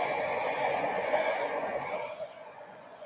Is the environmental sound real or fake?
fake